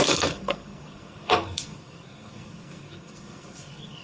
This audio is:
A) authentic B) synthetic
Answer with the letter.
B